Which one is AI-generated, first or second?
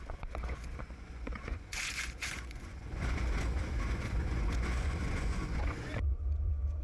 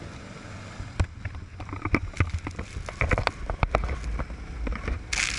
first